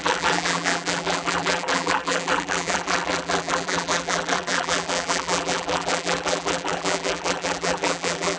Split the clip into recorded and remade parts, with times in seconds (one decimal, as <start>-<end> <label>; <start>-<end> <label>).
0.0-8.4 remade